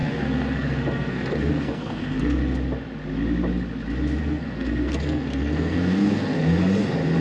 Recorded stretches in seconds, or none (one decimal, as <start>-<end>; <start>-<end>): 2.4-4.2; 6.6-7.2